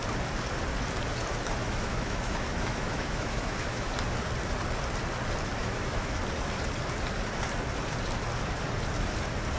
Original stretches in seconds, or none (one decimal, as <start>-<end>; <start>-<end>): 0.0-1.6; 3.9-5.6; 6.2-9.6